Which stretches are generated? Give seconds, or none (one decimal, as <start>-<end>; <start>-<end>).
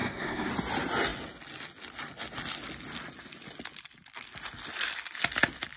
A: 0.0-0.5